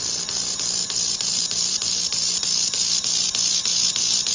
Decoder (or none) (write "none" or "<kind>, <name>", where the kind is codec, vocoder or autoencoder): none